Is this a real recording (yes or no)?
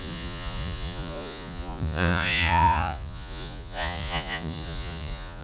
no